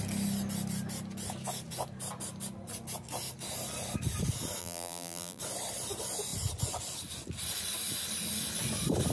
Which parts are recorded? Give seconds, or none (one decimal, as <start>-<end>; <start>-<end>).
0.0-4.6; 5.4-9.1